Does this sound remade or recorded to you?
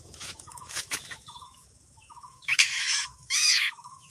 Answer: remade